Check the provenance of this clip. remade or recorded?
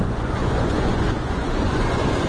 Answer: remade